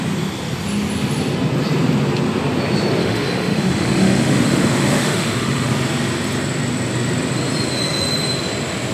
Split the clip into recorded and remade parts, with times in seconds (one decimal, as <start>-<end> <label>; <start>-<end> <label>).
0.0-3.0 recorded; 3.0-5.7 remade; 5.7-8.9 recorded